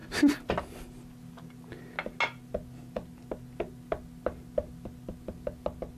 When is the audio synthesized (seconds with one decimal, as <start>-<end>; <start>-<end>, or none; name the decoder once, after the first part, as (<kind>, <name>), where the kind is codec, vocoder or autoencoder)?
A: none